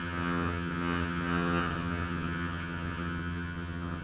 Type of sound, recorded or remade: remade